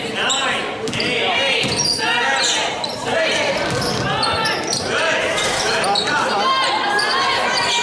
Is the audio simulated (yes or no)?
no